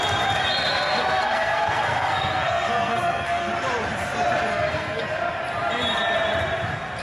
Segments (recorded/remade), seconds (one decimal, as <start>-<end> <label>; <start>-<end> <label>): 0.0-1.0 recorded; 1.0-3.5 remade; 3.5-4.5 recorded; 4.5-5.0 remade; 5.0-7.0 recorded